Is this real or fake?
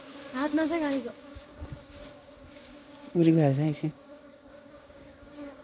fake